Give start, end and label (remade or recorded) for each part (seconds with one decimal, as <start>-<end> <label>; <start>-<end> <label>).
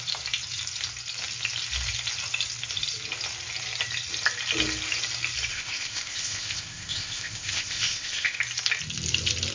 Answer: 0.0-5.5 recorded; 5.5-8.4 remade; 8.4-9.5 recorded